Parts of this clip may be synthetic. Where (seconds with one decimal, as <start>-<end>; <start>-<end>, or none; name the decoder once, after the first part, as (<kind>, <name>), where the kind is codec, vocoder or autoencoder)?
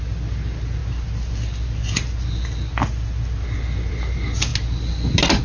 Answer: none